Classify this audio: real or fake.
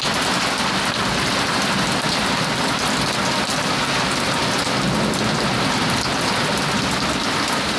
real